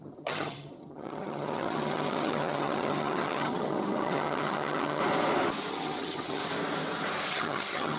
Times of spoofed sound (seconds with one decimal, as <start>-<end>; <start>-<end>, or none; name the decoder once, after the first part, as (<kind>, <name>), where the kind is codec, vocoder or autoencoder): 0.0-5.0 (vocoder, HiFi-GAN); 5.7-6.4; 7.3-8.0